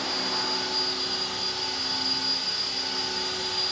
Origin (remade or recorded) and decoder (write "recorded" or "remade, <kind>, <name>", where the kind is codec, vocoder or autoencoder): recorded